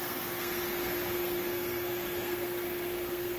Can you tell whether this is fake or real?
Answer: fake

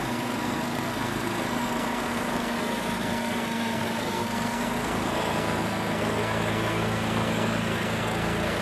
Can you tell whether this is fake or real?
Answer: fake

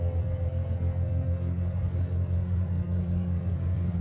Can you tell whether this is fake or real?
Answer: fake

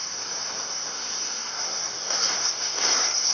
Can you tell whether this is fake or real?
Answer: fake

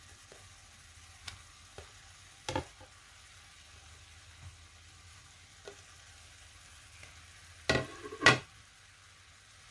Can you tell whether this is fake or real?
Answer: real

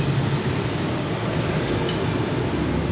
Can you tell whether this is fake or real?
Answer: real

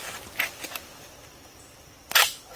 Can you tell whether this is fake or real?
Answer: real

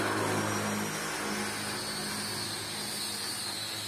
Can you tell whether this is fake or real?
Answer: real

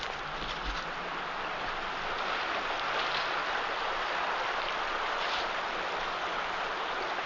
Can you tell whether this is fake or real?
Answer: real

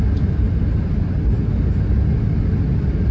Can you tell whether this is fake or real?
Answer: real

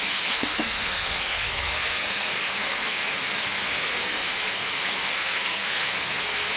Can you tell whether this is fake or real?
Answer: fake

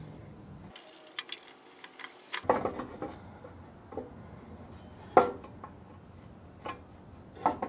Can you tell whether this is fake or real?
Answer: real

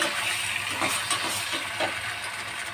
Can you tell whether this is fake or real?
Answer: real